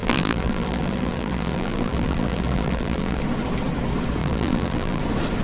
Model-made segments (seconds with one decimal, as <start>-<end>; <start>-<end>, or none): 0.0-3.2; 4.2-5.0